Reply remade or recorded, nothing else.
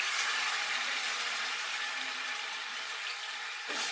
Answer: recorded